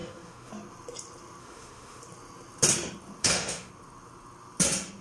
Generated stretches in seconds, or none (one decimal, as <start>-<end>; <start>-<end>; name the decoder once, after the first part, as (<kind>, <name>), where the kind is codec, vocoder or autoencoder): 0.0-0.5 (autoencoder, DAC-VAE); 1.4-2.0; 3.2-3.7